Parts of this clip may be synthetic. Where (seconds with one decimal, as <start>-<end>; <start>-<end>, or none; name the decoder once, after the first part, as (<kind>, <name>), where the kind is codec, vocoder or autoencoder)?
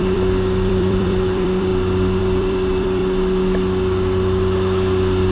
0.0-1.7 (vocoder, BigVGAN v2); 2.2-3.0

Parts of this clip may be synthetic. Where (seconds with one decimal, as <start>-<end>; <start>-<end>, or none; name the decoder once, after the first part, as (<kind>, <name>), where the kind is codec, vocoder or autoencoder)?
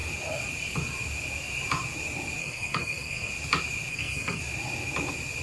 2.4-3.3 (codec, SNAC); 3.9-4.4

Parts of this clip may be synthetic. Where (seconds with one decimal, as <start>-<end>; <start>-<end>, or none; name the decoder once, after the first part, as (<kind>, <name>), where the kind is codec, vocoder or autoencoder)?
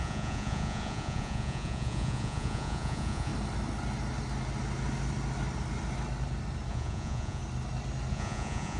0.0-3.3 (vocoder, Vocos); 6.7-7.4; 8.1-8.8